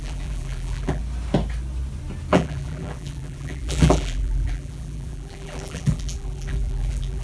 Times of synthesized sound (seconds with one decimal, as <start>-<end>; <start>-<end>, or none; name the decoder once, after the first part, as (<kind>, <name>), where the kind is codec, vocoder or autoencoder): 0.0-1.0 (vocoder, BigVGAN v2); 2.3-7.2